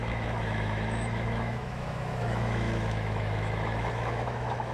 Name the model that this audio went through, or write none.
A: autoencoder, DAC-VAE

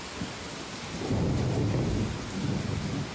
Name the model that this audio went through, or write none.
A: none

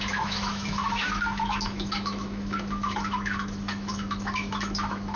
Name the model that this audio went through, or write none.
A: autoencoder, DAC-VAE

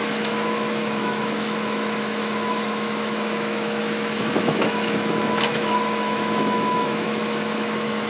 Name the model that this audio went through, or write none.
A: autoencoder, DAC-VAE